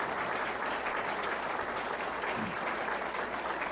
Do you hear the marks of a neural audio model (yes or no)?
no